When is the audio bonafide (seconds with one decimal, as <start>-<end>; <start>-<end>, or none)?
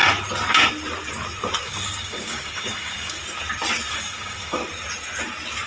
0.0-1.6; 3.2-3.9; 4.6-5.7